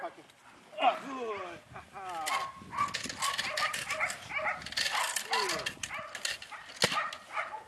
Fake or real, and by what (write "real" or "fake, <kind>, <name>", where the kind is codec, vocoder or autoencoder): real